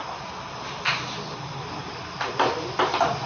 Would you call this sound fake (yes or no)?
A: no